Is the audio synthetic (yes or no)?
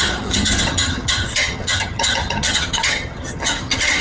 yes